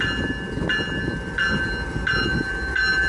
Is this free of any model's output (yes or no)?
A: yes